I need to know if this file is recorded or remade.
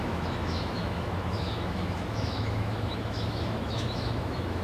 remade